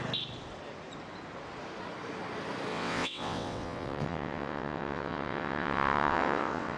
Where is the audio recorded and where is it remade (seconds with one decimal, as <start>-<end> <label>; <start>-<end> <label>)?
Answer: 0.0-2.7 recorded; 2.7-6.8 remade